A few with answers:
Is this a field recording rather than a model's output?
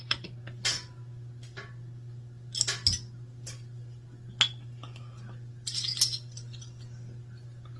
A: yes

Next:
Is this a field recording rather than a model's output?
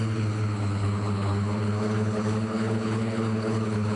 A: no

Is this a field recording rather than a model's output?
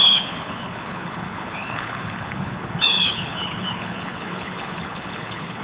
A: no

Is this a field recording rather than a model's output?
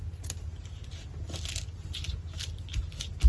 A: yes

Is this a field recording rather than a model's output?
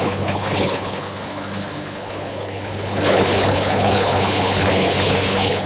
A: no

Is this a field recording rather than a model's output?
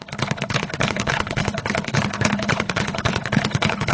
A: no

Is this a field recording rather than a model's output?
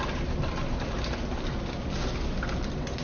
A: yes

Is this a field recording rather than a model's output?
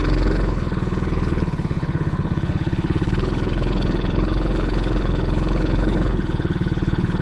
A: no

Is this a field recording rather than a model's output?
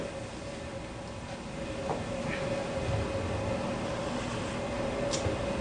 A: yes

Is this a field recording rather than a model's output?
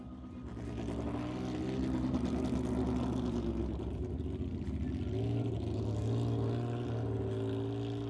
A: yes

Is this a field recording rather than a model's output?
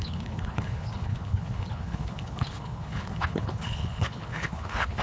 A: no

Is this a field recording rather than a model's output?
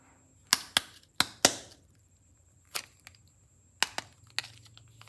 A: yes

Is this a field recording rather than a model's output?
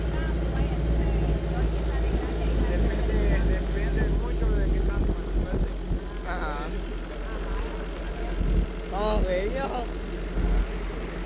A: yes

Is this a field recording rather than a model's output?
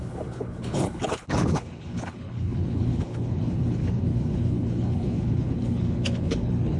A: no